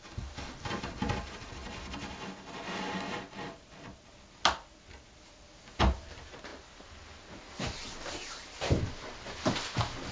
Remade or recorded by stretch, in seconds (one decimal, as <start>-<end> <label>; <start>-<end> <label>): 0.0-10.1 recorded